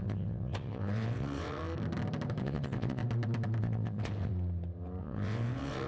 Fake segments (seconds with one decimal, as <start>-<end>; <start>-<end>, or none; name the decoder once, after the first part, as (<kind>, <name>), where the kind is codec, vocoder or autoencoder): 0.0-1.6 (vocoder, WaveNeXt); 2.4-3.0; 3.6-4.3; 5.0-5.9